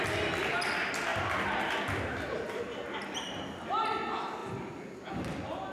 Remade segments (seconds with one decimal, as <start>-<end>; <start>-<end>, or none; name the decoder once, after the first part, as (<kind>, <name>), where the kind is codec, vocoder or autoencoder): 4.4-5.1 (vocoder, BigVGAN v2)